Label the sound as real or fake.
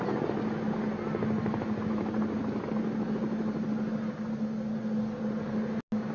real